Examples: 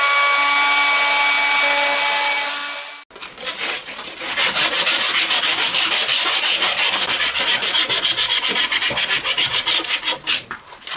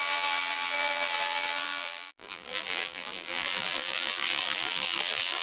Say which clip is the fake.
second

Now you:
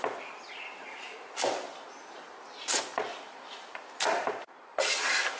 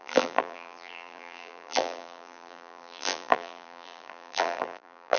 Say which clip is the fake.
second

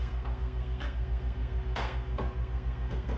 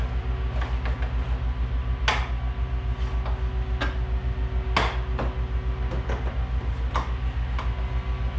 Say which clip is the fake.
first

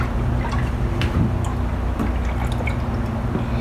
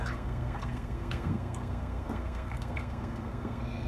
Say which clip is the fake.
second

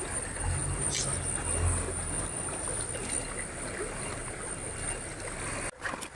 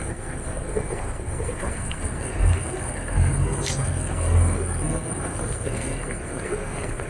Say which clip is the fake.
second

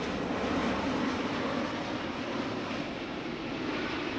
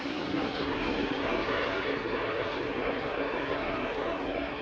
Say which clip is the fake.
second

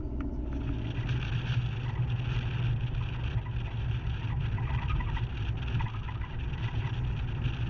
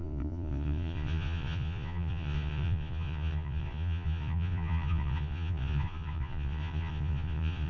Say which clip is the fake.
second